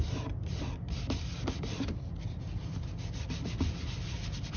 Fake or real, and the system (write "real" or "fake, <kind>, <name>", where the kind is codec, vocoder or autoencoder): fake, vocoder, BigVGAN v2